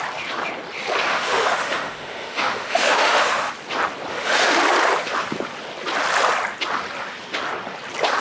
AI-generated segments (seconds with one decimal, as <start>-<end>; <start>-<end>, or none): 1.1-3.5; 4.1-4.6